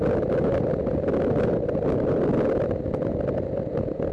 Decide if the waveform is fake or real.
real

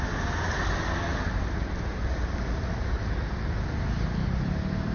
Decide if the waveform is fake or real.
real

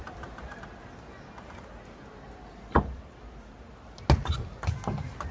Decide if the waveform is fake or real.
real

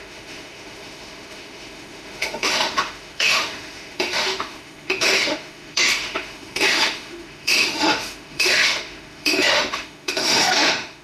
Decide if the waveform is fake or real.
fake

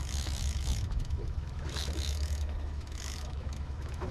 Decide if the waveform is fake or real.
fake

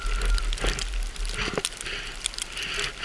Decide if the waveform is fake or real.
real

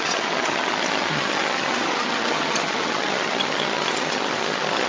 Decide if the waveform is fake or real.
fake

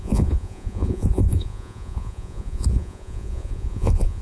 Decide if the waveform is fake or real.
fake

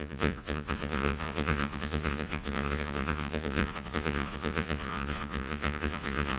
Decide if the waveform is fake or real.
fake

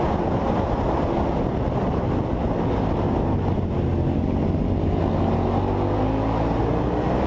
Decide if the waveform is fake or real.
real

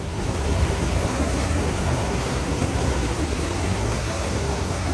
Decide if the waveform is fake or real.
fake